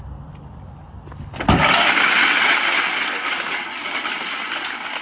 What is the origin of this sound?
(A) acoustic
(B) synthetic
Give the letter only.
A